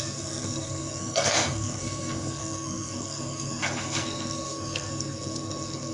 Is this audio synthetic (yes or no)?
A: yes